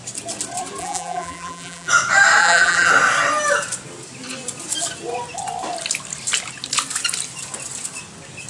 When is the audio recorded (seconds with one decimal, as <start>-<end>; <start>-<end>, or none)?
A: 0.0-0.8; 1.9-2.4; 2.9-8.5